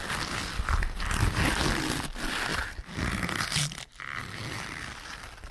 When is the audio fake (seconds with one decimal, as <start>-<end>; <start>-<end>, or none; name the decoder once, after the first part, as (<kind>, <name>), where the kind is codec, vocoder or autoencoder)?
0.4-1.2 (vocoder, BigVGAN v2); 2.5-5.5